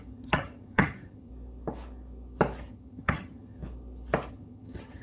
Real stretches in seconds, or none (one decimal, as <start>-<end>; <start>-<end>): 1.3-2.7; 3.6-4.3